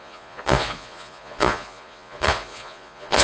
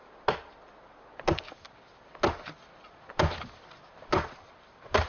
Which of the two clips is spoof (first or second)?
first